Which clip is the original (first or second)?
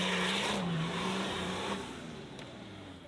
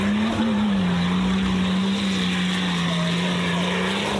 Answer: second